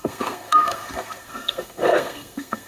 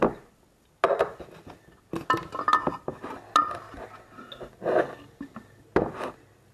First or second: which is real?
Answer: second